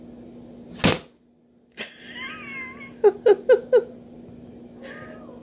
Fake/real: real